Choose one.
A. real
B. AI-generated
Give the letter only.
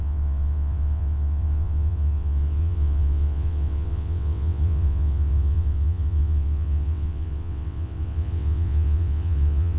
B